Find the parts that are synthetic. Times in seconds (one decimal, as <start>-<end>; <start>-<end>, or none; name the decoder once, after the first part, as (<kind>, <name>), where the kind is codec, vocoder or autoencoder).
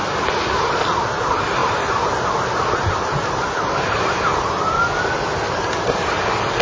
none